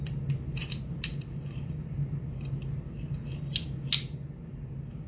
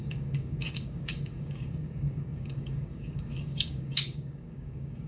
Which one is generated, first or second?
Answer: second